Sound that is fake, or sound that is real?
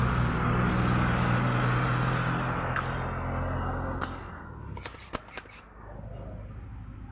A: real